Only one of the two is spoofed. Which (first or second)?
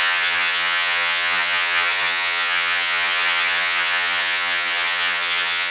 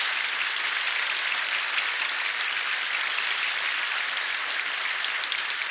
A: first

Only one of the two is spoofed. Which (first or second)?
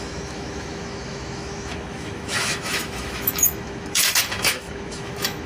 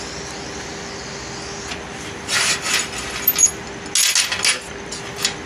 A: first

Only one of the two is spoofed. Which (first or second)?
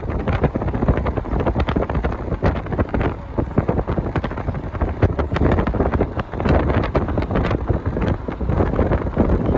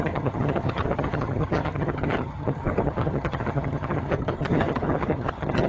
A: second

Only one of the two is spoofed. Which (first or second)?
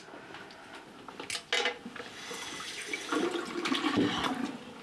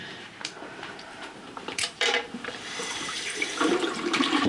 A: second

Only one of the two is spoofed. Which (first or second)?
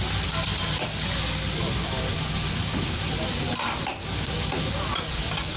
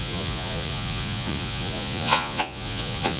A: second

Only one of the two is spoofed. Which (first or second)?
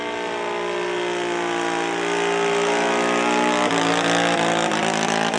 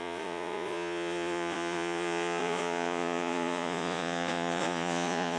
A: second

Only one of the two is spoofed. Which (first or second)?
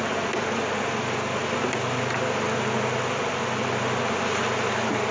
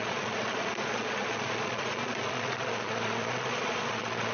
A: second